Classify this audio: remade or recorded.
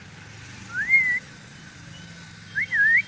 recorded